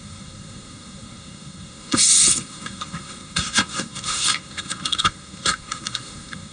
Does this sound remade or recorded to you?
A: remade